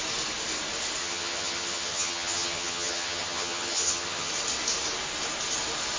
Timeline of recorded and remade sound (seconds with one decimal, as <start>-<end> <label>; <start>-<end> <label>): 0.0-1.0 recorded; 1.0-4.3 remade; 4.3-6.0 recorded